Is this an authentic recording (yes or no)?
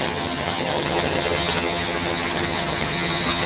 no